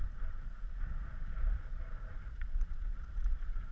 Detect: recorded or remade remade